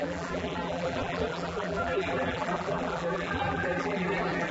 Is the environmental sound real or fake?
fake